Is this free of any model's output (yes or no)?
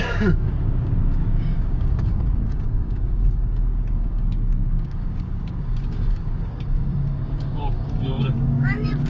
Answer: no